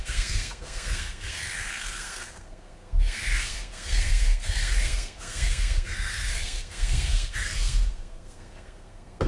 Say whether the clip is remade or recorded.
remade